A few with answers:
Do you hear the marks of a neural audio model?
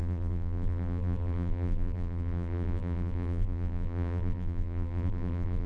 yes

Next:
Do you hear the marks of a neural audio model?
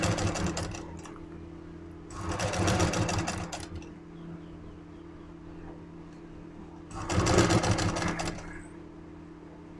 no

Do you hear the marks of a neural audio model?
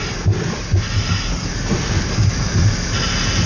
no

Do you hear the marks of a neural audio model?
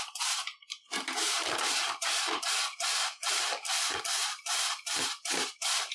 yes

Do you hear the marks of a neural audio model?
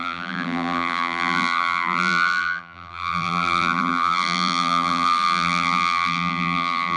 yes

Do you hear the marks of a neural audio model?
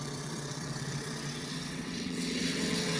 yes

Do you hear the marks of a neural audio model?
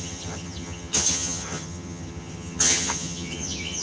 yes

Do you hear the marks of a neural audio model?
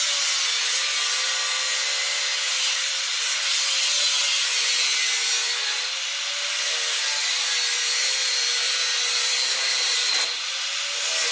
no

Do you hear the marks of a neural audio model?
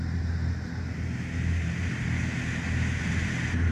no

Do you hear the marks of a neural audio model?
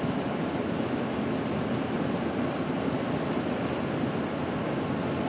no